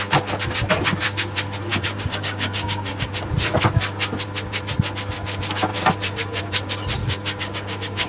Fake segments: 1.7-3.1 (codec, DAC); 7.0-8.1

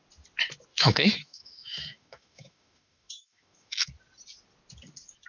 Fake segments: 0.7-3.9 (autoencoder, DAC-VAE)

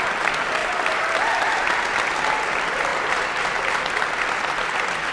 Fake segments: none

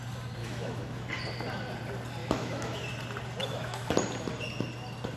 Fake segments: 0.4-1.1 (autoencoder, DAC-VAE); 2.2-2.8; 3.4-3.9

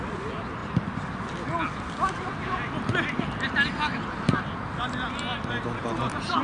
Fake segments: none

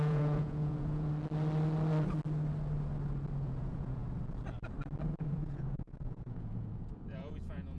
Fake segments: 0.0-1.1 (vocoder, Vocos); 3.4-4.0; 5.2-7.8

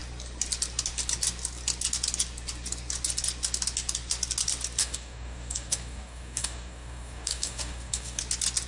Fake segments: 4.8-8.2 (codec, DAC)

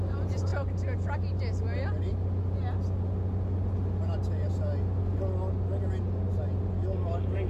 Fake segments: none